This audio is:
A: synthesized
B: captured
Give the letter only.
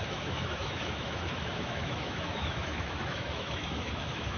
A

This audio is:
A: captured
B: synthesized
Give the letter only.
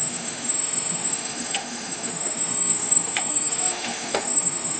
B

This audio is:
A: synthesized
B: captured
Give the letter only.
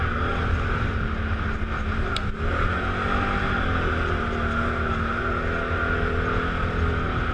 B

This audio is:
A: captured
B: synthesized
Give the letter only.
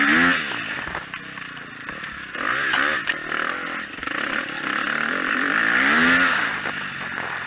A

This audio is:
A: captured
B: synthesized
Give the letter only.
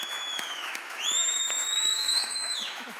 B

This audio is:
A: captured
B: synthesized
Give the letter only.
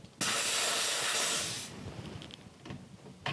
A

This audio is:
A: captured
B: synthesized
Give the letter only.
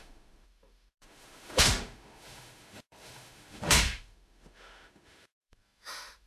B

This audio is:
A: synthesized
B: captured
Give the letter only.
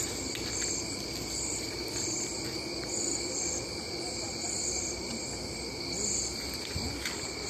B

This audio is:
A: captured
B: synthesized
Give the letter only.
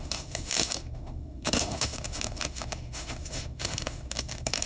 B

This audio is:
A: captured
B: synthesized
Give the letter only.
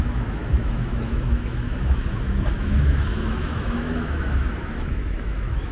B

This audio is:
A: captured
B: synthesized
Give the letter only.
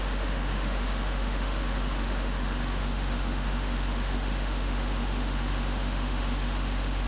B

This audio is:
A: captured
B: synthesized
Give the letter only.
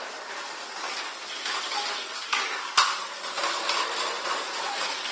A